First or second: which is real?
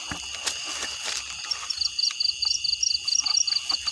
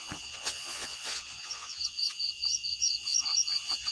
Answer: first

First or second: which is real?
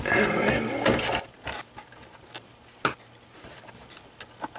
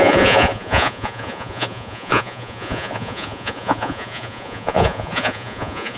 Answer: first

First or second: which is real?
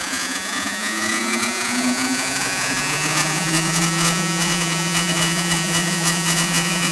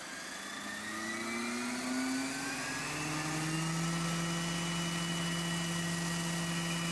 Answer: second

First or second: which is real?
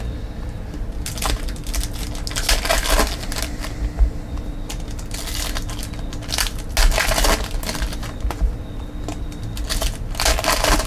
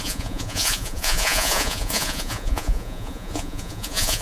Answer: first